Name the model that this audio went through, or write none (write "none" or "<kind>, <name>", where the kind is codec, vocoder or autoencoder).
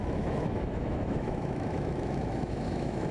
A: autoencoder, DAC-VAE